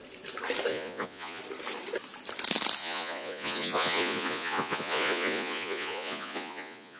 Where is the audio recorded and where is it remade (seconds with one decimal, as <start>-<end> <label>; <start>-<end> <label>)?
0.0-0.7 recorded; 0.7-1.4 remade; 1.4-2.8 recorded; 2.8-7.0 remade